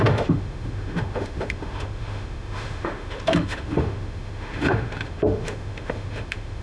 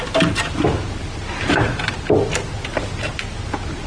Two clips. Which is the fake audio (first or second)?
first